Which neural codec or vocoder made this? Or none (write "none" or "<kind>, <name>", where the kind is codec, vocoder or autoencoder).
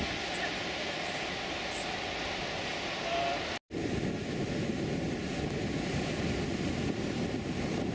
none